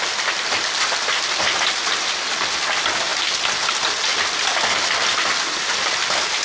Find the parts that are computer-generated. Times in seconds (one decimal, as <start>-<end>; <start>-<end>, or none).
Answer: none